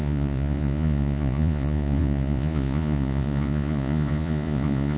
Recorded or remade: remade